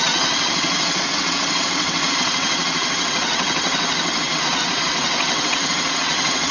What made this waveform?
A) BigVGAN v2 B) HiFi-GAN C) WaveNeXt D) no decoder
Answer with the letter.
C